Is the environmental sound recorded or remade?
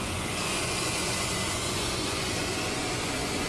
remade